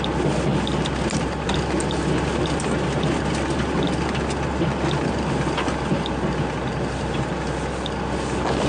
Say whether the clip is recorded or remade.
recorded